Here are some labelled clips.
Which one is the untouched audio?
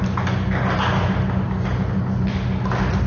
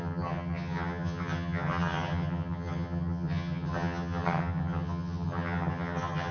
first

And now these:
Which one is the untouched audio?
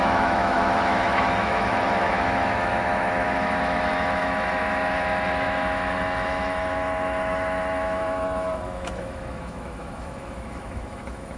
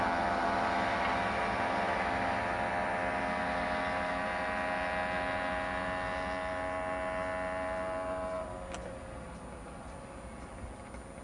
second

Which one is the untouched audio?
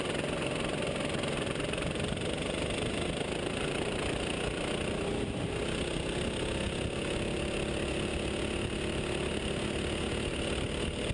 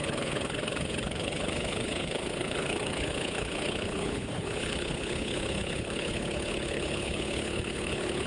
first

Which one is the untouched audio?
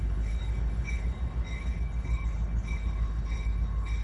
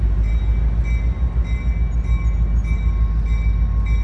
second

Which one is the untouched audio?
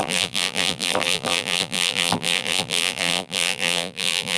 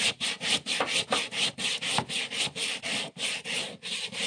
second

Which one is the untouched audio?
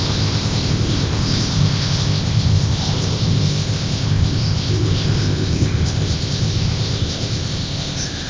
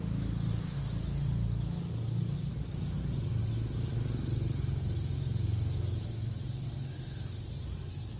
second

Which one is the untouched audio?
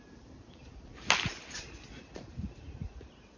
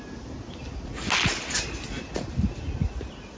second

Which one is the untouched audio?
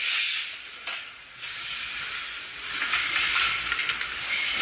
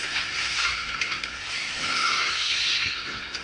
first